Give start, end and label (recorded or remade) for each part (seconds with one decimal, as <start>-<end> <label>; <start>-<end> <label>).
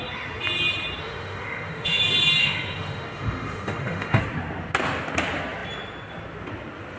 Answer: 0.0-1.0 recorded; 1.0-2.0 remade; 2.0-2.4 recorded; 2.4-4.2 remade; 4.2-7.0 recorded